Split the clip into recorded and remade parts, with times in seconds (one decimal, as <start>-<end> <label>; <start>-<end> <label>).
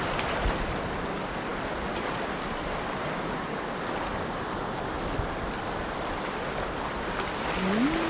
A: 0.0-8.1 recorded